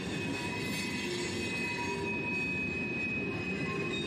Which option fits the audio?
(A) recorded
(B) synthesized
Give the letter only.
A